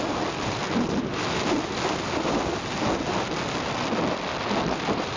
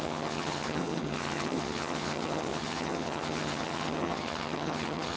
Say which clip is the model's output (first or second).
second